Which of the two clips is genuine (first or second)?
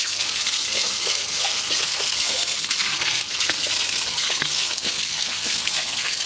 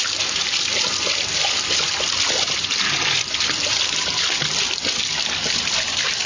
second